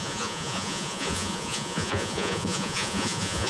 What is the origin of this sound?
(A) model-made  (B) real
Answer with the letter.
A